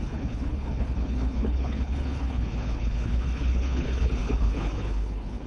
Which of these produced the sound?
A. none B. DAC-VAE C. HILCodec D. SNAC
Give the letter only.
C